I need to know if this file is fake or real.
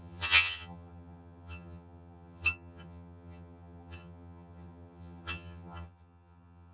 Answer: fake